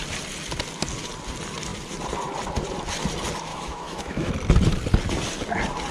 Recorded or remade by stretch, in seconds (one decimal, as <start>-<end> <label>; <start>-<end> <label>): 0.0-3.5 recorded; 3.5-4.3 remade; 4.3-5.9 recorded